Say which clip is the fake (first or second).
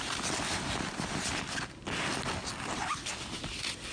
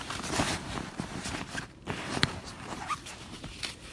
second